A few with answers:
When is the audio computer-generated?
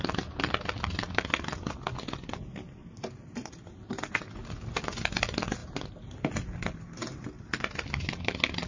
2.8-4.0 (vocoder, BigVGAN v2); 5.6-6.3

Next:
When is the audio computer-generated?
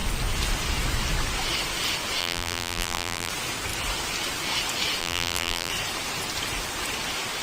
2.2-3.3 (vocoder, BigVGAN v2); 5.0-5.7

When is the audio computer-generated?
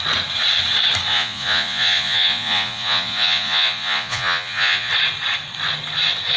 1.1-4.9 (vocoder, Vocos)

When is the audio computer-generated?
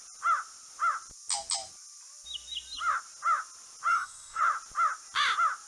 3.9-4.4 (codec, DAC)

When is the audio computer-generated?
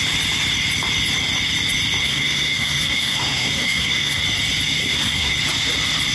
2.0-4.2 (codec, SNAC); 4.8-5.4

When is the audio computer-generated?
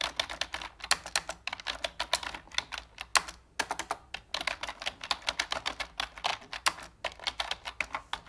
none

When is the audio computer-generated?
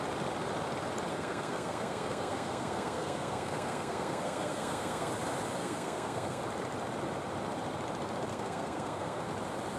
1.1-5.1 (codec, SNAC); 5.6-6.4; 8.3-9.3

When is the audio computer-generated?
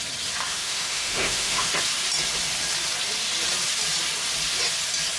0.5-1.7 (autoencoder, DAC-VAE)